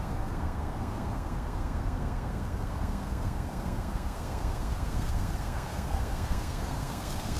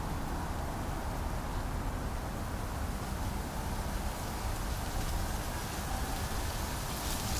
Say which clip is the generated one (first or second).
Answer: first